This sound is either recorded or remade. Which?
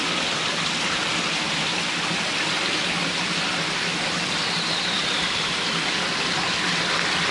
recorded